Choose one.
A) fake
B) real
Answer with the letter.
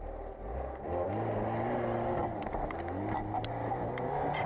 B